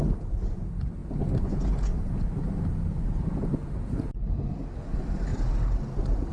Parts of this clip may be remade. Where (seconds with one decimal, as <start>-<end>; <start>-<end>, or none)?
none